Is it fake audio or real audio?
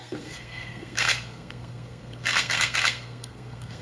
fake